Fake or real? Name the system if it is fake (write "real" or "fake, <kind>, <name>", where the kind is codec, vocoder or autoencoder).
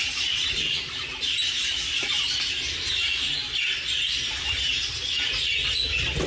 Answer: real